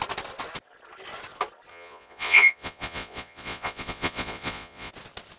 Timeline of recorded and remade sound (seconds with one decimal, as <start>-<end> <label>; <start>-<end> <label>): 0.0-1.7 recorded; 1.7-4.9 remade; 4.9-5.4 recorded